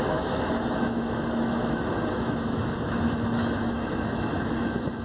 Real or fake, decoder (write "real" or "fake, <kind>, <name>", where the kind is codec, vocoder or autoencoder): fake, autoencoder, DAC-VAE